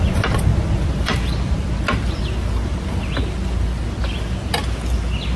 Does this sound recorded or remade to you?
recorded